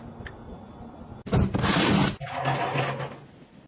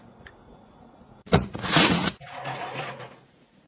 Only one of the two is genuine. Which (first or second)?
first